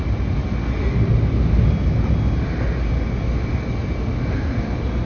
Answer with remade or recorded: recorded